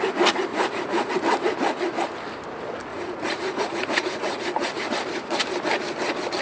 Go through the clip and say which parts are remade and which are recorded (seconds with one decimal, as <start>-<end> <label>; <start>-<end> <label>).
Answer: 0.0-0.5 recorded; 0.5-1.1 remade; 1.1-2.9 recorded; 2.9-4.9 remade; 4.9-6.4 recorded